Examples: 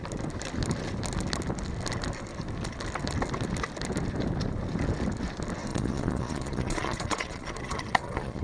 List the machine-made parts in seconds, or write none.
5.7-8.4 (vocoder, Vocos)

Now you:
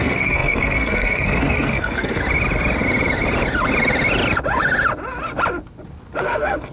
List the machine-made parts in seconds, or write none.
0.0-2.2 (codec, SNAC); 6.2-6.7

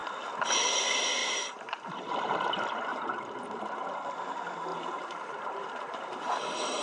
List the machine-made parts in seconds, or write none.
1.2-2.1 (vocoder, BigVGAN v2); 2.9-3.7; 4.7-6.3

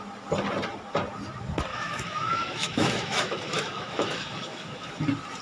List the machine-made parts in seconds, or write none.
1.7-4.9 (autoencoder, DAC-VAE)